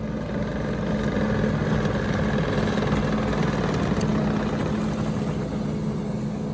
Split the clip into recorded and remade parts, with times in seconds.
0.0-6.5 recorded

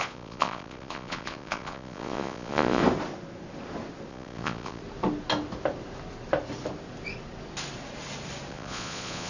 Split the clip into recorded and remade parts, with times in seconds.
0.0-2.8 remade; 2.8-4.1 recorded; 4.1-4.8 remade; 4.8-8.5 recorded; 8.5-9.3 remade

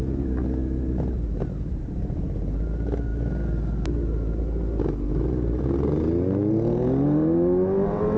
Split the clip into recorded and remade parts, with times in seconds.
0.0-8.2 recorded

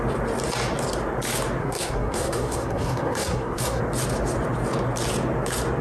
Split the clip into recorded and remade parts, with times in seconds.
0.0-1.6 recorded; 1.6-3.8 remade; 3.8-5.8 recorded

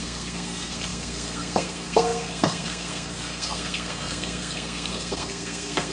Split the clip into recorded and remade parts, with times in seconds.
0.0-5.9 remade